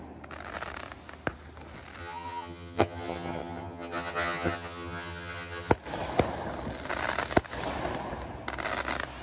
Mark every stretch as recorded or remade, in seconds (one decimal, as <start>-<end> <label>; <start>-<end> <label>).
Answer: 0.0-2.0 recorded; 2.0-5.7 remade; 5.7-9.2 recorded